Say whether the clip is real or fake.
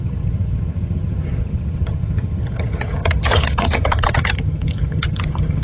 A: fake